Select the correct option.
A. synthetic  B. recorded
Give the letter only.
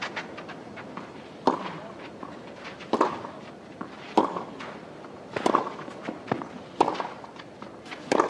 B